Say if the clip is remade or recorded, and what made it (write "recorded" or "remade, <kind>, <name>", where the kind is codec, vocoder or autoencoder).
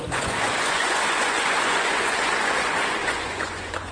remade, vocoder, Vocos